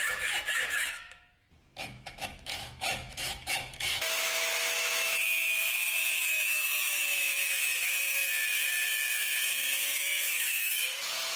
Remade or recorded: remade